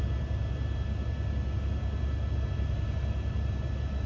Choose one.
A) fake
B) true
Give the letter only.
B